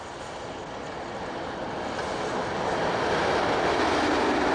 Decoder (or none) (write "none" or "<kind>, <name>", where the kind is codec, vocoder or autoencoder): none